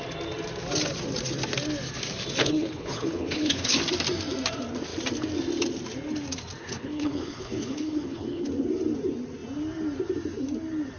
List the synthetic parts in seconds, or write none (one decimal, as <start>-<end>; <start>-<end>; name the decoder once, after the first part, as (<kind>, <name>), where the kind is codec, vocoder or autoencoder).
2.4-3.8 (codec, HILCodec); 6.6-8.5